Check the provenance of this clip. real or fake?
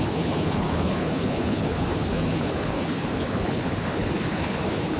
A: fake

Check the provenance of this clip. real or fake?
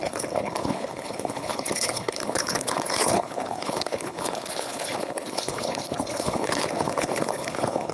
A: fake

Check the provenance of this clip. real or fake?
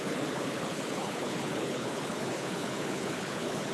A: fake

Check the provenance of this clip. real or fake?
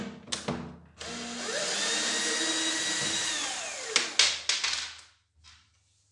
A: real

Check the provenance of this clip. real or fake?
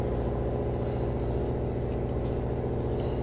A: real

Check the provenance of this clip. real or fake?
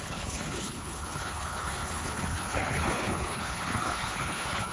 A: fake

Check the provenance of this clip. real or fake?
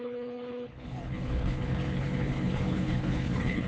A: fake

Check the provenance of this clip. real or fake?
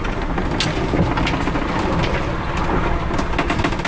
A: real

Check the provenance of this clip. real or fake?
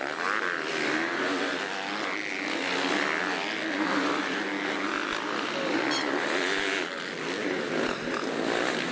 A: real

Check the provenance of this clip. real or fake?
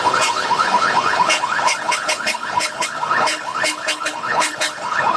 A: fake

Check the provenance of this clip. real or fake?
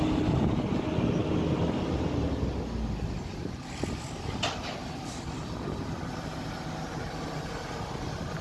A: real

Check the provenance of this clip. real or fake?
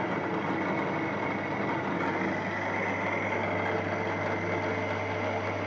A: real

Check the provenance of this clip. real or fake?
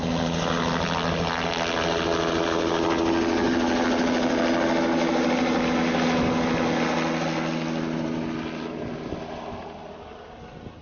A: real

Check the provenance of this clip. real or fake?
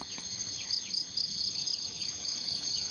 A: fake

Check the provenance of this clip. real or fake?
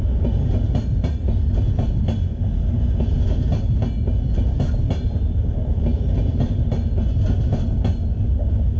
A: real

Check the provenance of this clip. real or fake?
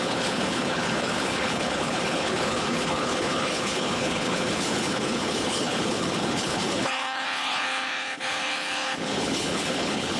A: fake